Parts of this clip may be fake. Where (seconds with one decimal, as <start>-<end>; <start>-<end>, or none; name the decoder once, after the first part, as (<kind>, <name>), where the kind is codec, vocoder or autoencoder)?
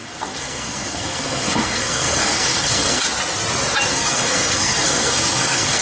0.0-3.0 (codec, SNAC); 3.9-5.8